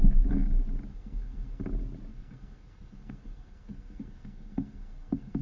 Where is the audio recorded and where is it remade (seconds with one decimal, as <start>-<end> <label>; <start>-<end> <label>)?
0.0-0.9 recorded; 0.9-1.6 remade; 1.6-2.1 recorded; 2.1-5.4 remade

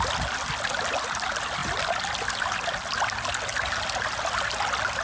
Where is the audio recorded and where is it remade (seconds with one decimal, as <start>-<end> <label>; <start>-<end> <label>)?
0.0-5.0 recorded